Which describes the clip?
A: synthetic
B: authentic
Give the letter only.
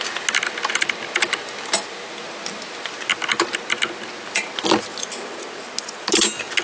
B